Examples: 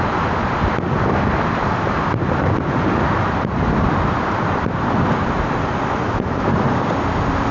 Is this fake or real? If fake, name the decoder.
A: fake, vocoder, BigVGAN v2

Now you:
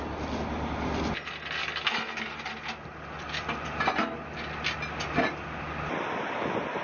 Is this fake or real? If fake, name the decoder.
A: real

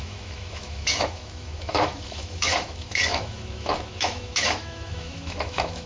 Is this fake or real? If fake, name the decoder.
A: fake, autoencoder, DAC-VAE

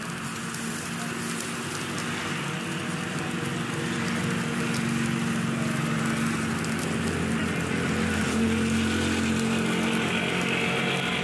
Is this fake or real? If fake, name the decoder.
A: real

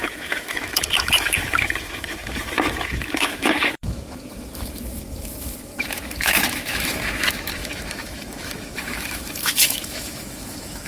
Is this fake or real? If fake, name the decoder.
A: fake, autoencoder, DAC-VAE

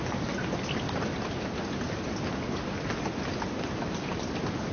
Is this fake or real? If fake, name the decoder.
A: real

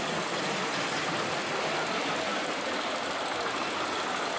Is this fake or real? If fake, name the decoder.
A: real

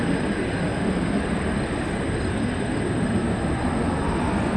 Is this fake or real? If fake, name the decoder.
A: real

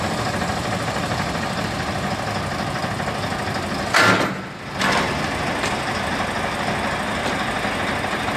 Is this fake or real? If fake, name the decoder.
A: real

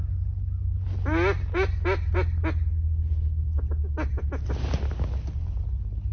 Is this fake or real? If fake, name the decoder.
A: real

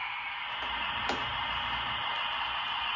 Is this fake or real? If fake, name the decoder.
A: real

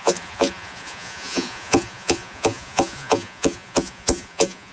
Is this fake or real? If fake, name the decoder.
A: fake, vocoder, Vocos